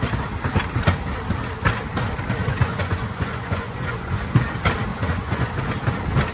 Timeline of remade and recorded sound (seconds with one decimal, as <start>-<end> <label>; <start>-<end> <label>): 0.0-2.5 recorded; 2.5-4.2 remade; 4.2-4.9 recorded; 4.9-5.5 remade; 5.5-6.3 recorded

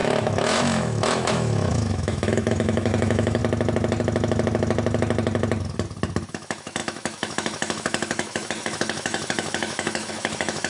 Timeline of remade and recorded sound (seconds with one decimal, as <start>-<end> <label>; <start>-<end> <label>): 0.0-3.4 remade; 3.4-6.3 recorded; 6.3-10.7 remade

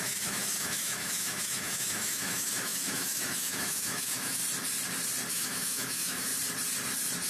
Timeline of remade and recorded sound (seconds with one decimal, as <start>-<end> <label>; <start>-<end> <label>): 0.0-4.4 remade; 4.4-5.3 recorded; 5.3-6.3 remade; 6.3-7.3 recorded

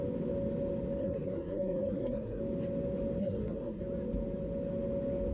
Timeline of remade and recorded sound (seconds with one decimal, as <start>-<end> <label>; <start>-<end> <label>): 0.0-1.0 recorded; 1.0-2.4 remade; 2.4-3.2 recorded; 3.2-3.8 remade; 3.8-5.3 recorded

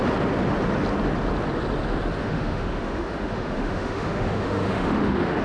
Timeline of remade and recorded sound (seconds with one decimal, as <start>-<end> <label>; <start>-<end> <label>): 0.0-2.2 recorded; 2.2-5.4 remade